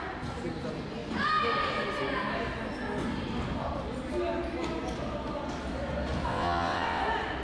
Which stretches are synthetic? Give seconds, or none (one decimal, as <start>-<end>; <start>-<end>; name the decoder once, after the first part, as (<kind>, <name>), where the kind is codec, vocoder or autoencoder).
6.3-7.0 (vocoder, WaveNeXt)